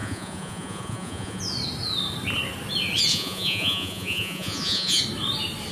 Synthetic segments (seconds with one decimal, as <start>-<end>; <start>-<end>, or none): 0.0-1.4; 3.1-5.0

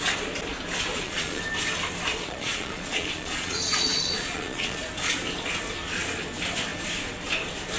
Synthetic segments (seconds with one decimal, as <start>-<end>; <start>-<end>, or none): 0.9-1.4; 2.1-4.9

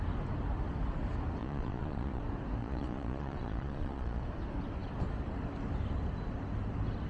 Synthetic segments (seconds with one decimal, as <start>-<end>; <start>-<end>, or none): 1.4-2.2; 2.6-4.2

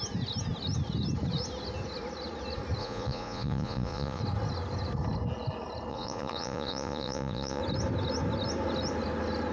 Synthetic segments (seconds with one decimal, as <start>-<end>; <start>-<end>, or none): 2.8-4.2; 5.9-7.6

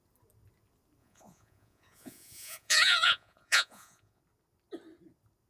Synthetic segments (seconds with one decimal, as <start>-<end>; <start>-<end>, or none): 1.0-4.2

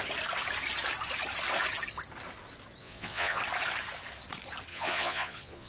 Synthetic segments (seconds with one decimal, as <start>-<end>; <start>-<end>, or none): 2.8-3.4; 4.7-5.7